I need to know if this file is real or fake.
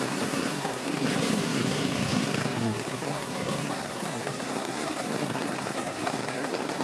fake